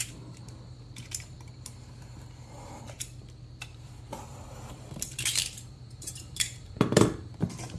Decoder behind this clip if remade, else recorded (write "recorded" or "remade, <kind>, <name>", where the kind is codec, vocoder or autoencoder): remade, vocoder, BigVGAN v2